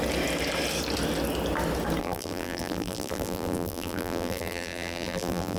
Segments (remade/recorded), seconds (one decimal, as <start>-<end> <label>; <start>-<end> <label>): 0.0-2.0 recorded; 2.0-5.6 remade